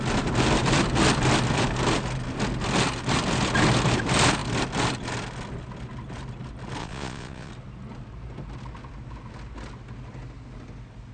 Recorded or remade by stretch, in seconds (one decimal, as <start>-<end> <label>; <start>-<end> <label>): 0.0-6.8 recorded; 6.8-7.5 remade; 7.5-11.1 recorded